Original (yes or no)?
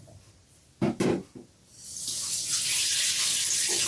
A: yes